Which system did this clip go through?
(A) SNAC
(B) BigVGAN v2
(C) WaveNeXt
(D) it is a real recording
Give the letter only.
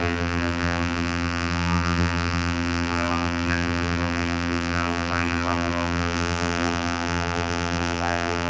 B